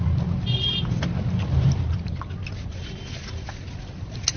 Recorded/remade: recorded